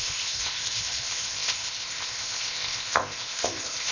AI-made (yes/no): yes